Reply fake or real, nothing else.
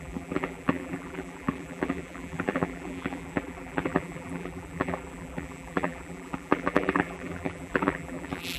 fake